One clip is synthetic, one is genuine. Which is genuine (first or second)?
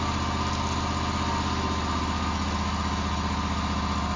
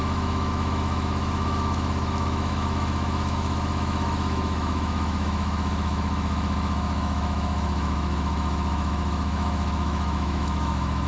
first